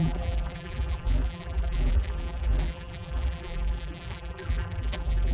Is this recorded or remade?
remade